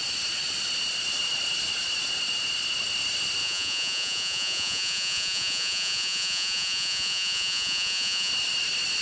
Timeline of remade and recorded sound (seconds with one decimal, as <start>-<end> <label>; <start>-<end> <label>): 0.0-3.4 recorded; 3.4-8.3 remade; 8.3-9.0 recorded